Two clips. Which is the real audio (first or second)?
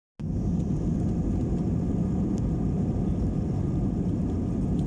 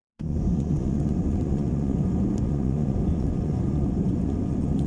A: first